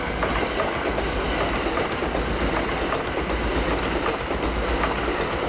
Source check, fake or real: real